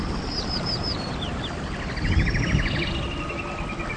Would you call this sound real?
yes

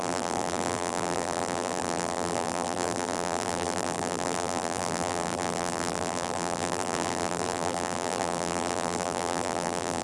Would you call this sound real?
no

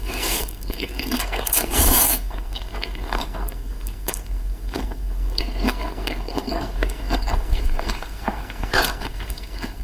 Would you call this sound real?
no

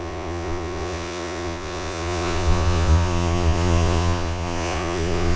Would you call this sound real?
no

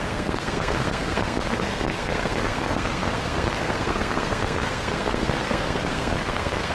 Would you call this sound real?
no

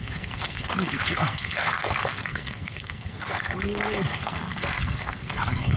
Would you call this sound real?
no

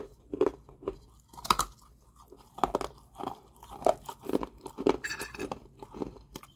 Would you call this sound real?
yes